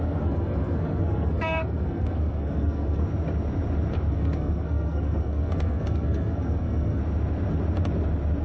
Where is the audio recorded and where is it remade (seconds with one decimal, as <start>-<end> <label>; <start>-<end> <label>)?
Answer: 0.0-3.0 remade; 3.0-4.1 recorded; 4.1-7.0 remade; 7.0-8.4 recorded

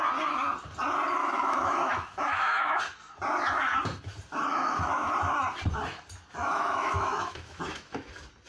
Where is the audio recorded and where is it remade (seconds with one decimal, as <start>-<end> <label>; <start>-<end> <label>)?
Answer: 0.0-1.2 recorded; 1.2-2.8 remade; 2.8-4.5 recorded; 4.5-5.1 remade; 5.1-6.4 recorded; 6.4-8.1 remade; 8.1-8.5 recorded

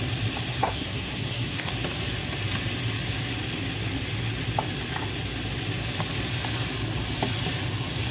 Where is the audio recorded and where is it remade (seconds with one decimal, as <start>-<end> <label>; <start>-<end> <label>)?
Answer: 0.0-0.5 recorded; 0.5-1.7 remade; 1.7-8.1 recorded

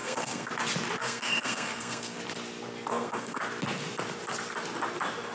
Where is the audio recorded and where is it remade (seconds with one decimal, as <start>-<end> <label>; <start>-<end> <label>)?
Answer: 0.0-0.5 remade; 0.5-1.0 recorded; 1.0-2.2 remade; 2.2-2.9 recorded; 2.9-3.4 remade; 3.4-5.3 recorded

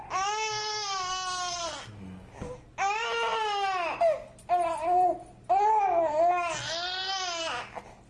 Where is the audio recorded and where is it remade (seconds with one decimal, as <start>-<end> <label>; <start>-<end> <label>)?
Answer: 0.0-8.1 recorded

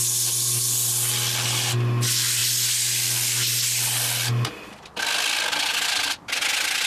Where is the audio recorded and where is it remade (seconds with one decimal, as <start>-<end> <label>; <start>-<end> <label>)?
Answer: 0.0-6.9 recorded

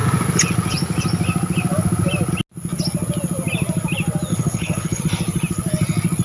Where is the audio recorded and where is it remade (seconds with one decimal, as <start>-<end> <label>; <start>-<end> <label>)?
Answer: 0.0-4.3 recorded; 4.3-5.0 remade; 5.0-6.2 recorded